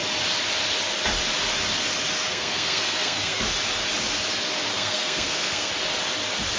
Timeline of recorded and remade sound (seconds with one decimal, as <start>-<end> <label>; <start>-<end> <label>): 0.0-2.3 recorded; 2.3-3.4 remade; 3.4-4.7 recorded; 4.7-5.7 remade; 5.7-6.6 recorded